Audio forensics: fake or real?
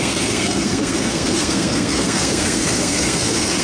fake